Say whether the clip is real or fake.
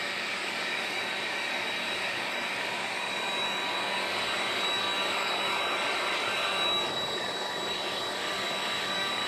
fake